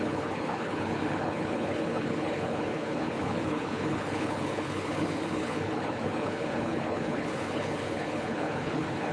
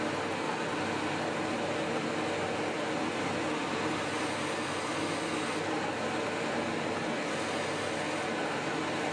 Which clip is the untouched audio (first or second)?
second